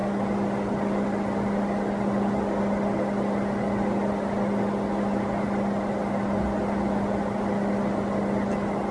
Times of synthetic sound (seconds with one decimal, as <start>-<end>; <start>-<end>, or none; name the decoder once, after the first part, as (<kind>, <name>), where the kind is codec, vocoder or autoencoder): none